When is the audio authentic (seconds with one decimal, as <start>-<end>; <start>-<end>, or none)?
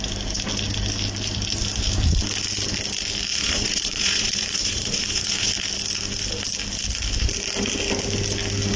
0.0-3.3; 5.5-8.8